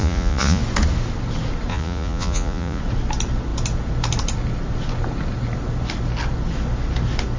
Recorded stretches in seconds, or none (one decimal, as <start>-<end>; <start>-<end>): 0.6-1.7; 2.8-7.4